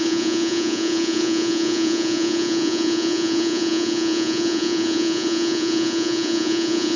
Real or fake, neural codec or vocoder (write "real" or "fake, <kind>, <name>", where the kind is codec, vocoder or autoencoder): fake, vocoder, Vocos